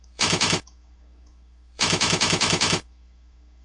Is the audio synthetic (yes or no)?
yes